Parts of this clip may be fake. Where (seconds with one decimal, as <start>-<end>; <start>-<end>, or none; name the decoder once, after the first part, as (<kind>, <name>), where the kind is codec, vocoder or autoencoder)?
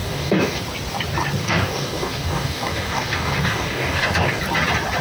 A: 0.0-0.6 (codec, DAC); 1.4-4.4